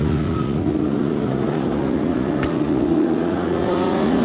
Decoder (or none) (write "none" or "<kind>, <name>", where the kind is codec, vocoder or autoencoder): vocoder, Vocos